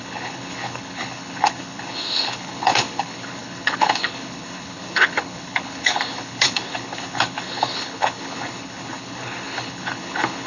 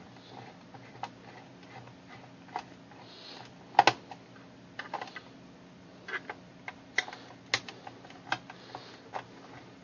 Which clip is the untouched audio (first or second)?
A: second